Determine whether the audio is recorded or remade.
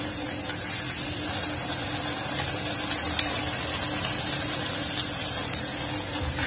recorded